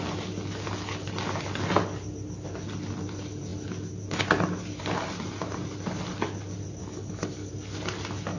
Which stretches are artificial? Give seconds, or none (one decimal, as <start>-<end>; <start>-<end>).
6.8-7.5